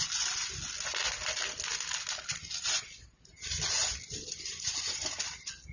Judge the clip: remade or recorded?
recorded